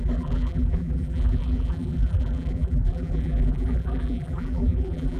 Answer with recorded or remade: remade